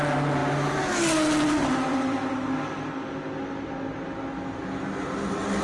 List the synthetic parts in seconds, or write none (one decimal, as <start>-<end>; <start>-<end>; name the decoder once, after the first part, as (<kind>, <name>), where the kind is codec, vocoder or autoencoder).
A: none